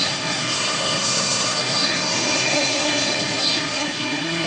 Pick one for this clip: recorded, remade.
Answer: remade